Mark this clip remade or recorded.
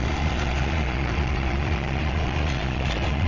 remade